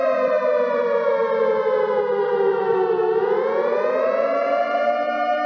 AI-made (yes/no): no